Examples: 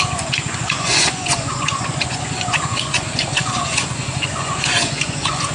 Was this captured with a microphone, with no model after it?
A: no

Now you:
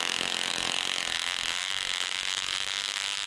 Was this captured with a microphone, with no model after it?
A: no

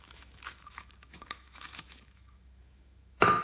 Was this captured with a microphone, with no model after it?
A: no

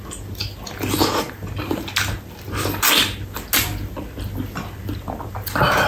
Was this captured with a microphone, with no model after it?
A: yes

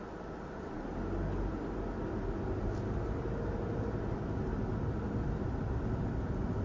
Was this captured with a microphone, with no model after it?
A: yes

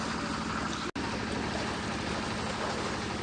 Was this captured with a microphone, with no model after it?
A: yes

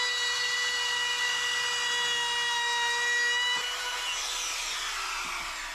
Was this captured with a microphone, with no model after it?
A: yes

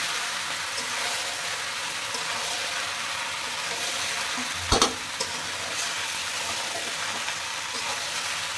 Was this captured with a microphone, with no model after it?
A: yes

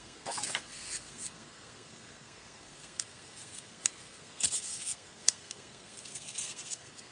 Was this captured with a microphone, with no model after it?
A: no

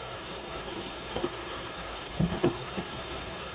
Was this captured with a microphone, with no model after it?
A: no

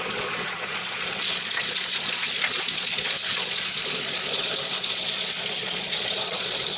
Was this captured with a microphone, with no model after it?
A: no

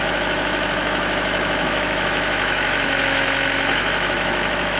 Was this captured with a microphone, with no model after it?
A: no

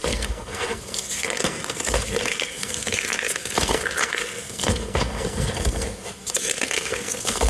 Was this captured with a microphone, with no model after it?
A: no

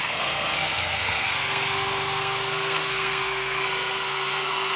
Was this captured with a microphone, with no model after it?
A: no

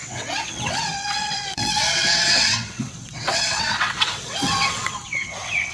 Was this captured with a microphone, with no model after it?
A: no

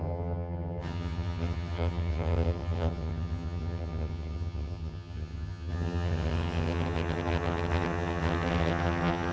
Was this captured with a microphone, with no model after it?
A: no